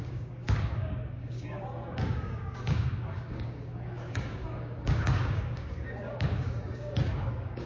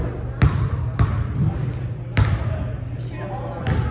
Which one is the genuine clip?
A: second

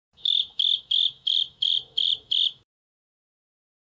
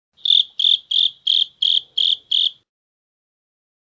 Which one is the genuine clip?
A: second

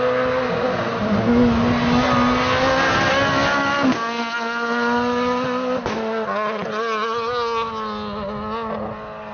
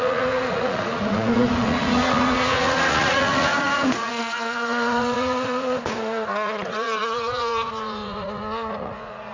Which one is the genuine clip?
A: first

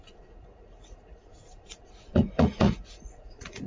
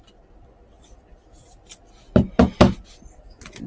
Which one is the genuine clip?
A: second